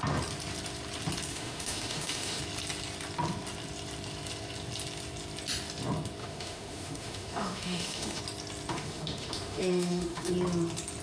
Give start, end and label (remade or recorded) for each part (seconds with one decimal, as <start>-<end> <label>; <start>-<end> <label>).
0.0-1.3 recorded; 1.3-2.4 remade; 2.4-6.2 recorded; 6.2-8.2 remade; 8.2-8.7 recorded; 8.7-10.3 remade; 10.3-11.0 recorded